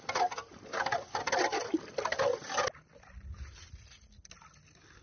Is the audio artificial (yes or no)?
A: no